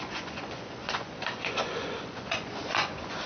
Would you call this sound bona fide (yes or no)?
no